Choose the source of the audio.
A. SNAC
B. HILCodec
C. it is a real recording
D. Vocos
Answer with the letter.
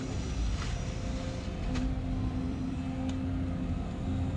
C